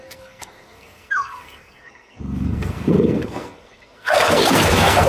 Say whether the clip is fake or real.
fake